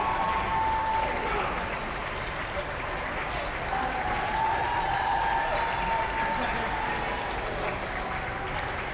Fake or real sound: real